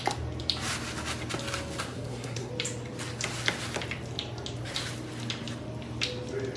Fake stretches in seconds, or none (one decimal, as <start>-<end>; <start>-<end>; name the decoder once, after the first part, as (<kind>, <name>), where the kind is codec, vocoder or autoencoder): 1.8-2.5 (codec, SNAC)